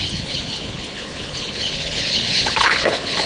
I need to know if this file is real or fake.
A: fake